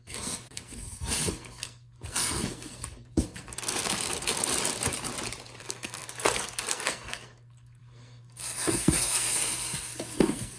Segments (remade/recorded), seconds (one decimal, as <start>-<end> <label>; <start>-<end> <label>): 0.0-4.4 remade; 4.4-5.6 recorded; 5.6-10.6 remade